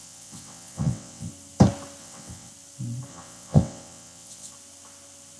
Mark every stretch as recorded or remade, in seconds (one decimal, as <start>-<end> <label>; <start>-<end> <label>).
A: 0.0-1.3 remade; 1.3-2.0 recorded; 2.0-2.5 remade; 2.5-3.1 recorded; 3.1-4.5 remade; 4.5-5.4 recorded